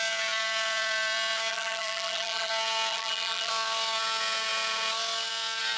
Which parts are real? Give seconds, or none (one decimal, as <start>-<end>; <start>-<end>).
0.0-1.5; 2.5-2.9; 3.5-5.8